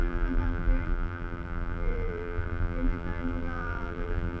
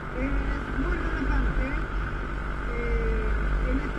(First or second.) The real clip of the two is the second